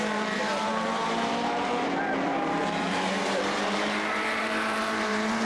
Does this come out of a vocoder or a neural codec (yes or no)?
yes